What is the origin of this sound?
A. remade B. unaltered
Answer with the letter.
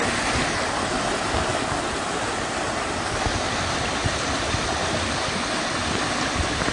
B